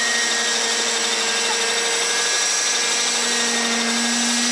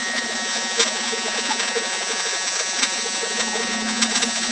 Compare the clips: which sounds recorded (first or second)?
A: first